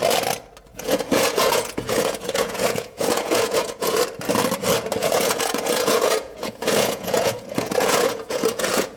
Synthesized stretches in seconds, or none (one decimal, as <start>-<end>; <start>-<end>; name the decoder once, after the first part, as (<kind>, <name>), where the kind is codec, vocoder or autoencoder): 0.7-4.0 (vocoder, Vocos); 5.0-9.0